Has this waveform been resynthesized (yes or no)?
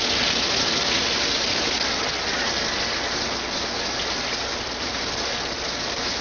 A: no